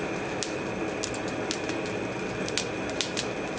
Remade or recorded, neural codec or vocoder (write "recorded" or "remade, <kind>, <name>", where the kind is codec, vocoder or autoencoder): recorded